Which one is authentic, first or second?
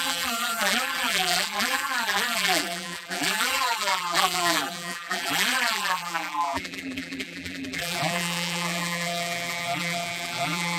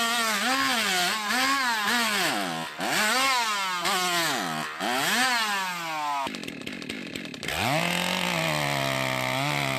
second